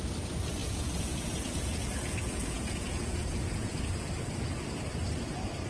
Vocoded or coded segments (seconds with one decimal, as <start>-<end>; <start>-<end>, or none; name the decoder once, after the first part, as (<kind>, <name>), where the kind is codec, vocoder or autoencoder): 0.6-4.0 (vocoder, Vocos)